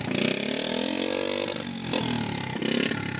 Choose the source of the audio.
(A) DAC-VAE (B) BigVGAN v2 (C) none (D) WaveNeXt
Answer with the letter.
C